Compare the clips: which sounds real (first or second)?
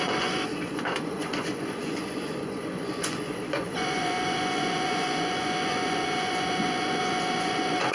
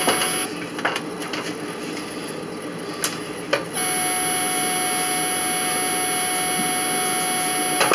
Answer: second